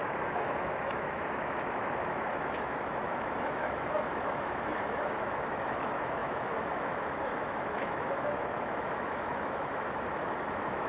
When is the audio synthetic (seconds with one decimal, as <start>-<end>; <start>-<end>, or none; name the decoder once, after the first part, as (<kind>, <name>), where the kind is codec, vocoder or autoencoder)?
0.0-10.9 (autoencoder, DAC-VAE)